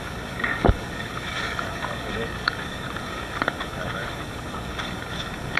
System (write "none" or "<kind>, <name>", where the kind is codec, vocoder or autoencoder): codec, DAC